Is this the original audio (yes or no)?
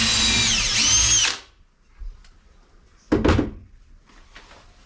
yes